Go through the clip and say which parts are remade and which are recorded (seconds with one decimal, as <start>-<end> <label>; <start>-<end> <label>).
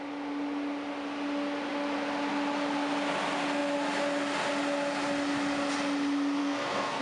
0.0-6.4 recorded; 6.4-7.0 remade